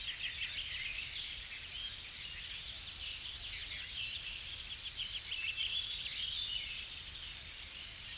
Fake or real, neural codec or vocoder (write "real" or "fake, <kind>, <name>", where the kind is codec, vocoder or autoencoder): real